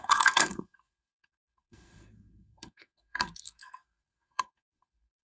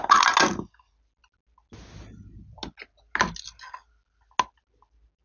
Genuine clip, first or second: second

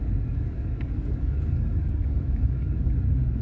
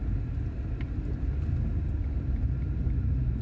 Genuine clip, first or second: second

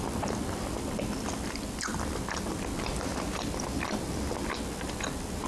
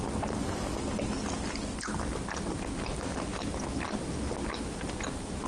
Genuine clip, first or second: second